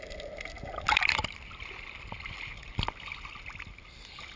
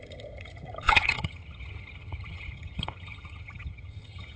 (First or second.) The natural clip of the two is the first